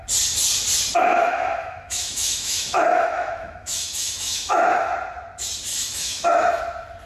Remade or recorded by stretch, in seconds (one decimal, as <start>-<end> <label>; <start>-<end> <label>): 0.0-1.2 recorded; 1.2-4.9 remade; 4.9-5.7 recorded; 5.7-6.6 remade; 6.6-7.1 recorded